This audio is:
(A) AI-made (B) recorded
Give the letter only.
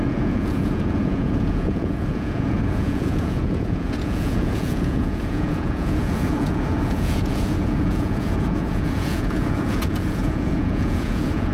A